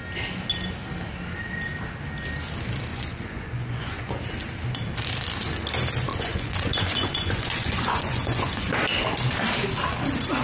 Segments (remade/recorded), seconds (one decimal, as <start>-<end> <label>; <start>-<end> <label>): 0.0-2.9 recorded; 2.9-4.1 remade; 4.1-6.1 recorded; 6.1-8.7 remade; 8.7-10.4 recorded